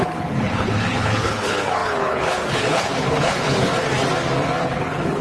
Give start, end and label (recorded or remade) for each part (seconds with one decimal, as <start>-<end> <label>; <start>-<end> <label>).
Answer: 0.0-3.7 remade; 3.7-4.6 recorded; 4.6-5.2 remade